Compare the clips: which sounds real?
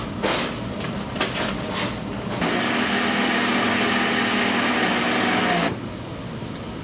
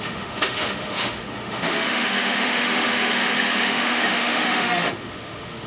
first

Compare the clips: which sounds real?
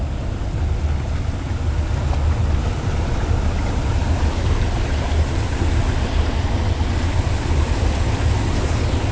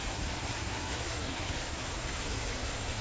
first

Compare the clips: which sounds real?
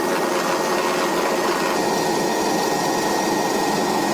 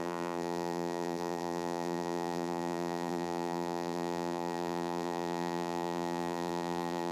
first